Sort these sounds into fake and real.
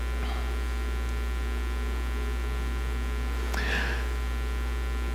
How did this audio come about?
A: real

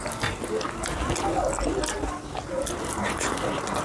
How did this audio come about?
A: real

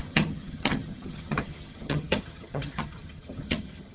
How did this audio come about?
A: fake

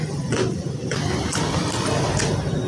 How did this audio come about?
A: real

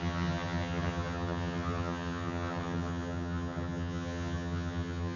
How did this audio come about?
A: fake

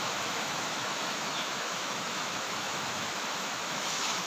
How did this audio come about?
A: fake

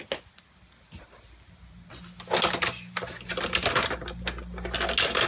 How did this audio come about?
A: real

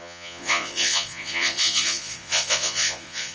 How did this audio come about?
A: fake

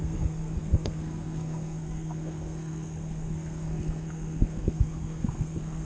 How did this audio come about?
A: fake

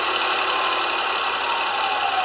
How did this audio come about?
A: real